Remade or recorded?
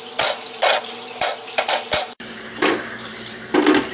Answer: remade